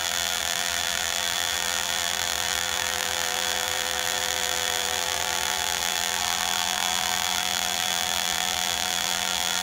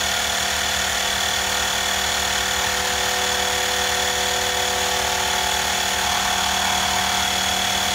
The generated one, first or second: first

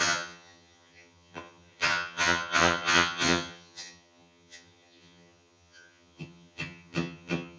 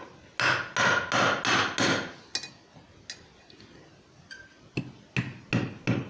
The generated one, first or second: first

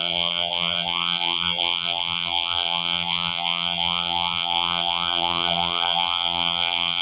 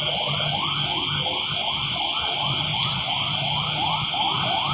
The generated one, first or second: first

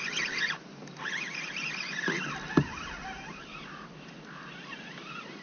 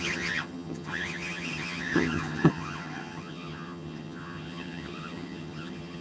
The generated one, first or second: second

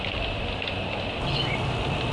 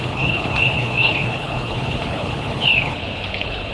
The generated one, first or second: second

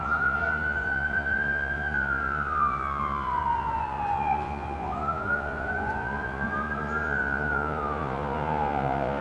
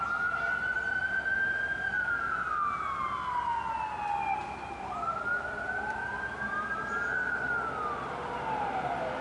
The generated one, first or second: first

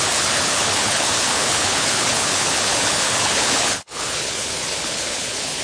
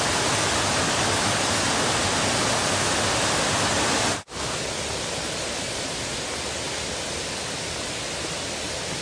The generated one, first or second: first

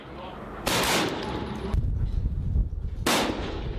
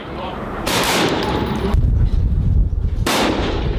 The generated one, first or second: second